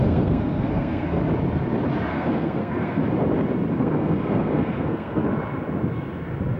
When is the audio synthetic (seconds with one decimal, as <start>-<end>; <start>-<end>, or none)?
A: 0.0-1.2; 2.1-3.0; 3.7-5.2